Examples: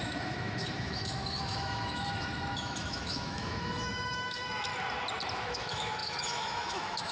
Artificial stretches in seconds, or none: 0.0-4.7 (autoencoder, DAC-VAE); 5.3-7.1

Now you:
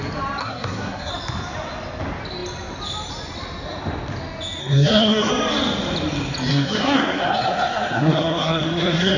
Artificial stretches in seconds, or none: 0.4-1.1 (codec, SNAC); 4.6-5.3; 6.5-9.2

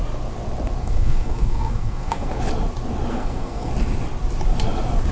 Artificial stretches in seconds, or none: 0.8-2.4 (codec, SNAC); 3.1-3.7

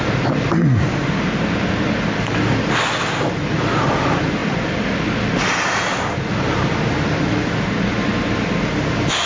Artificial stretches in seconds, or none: none

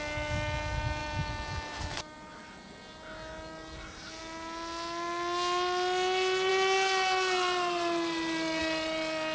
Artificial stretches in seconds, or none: none

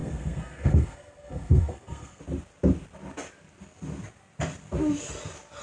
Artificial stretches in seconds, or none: 0.0-2.2 (codec, SNAC)

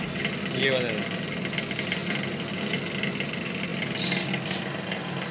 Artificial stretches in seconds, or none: none